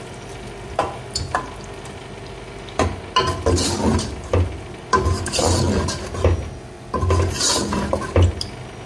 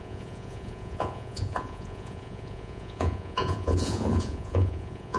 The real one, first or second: first